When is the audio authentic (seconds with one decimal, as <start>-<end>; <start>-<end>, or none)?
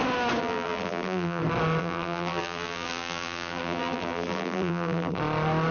0.0-0.4; 1.4-1.8; 5.2-5.7